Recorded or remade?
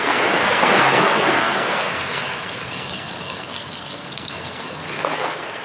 remade